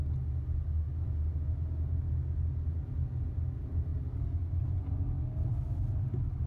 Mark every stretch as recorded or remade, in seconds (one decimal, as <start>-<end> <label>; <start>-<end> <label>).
0.0-6.5 recorded